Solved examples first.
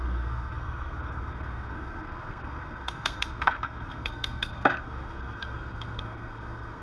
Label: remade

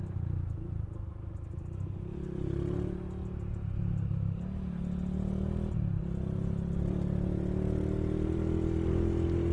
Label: recorded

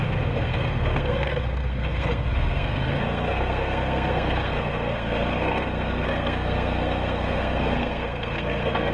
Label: remade